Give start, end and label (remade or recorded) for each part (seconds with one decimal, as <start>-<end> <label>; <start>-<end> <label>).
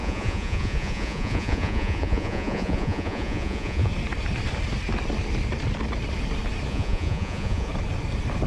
0.0-3.9 remade; 3.9-6.7 recorded; 6.7-7.7 remade; 7.7-8.5 recorded